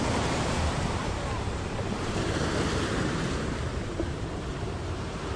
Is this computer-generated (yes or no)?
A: yes